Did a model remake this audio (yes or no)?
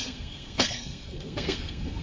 yes